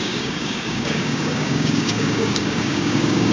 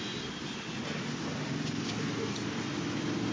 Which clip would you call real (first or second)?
second